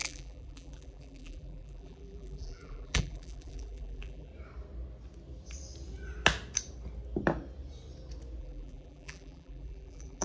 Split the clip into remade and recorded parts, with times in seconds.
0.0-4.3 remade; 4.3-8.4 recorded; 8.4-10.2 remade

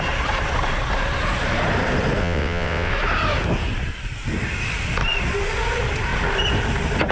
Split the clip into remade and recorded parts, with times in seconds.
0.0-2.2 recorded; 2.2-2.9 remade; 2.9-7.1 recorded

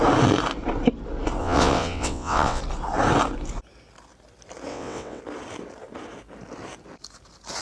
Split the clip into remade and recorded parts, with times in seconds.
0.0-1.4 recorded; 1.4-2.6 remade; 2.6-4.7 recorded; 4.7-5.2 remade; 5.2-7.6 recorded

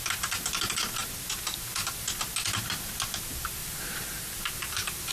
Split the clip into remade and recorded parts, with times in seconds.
0.0-3.6 recorded; 3.6-5.1 remade

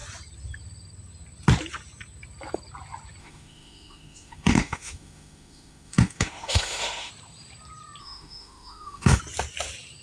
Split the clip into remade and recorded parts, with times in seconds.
0.0-3.2 recorded; 3.2-7.1 remade; 7.1-8.0 recorded; 8.0-9.2 remade; 9.2-10.0 recorded

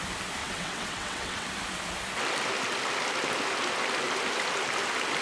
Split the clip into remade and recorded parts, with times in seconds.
0.0-0.4 recorded; 0.4-1.5 remade; 1.5-5.2 recorded